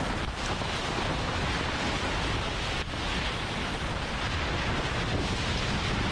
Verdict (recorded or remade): recorded